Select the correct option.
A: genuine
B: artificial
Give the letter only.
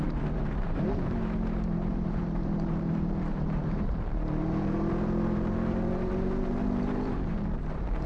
B